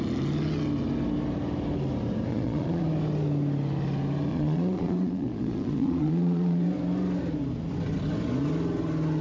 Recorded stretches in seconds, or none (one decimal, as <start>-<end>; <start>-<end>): 0.0-2.3; 2.8-4.3; 6.6-9.2